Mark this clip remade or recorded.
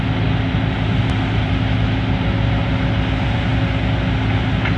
recorded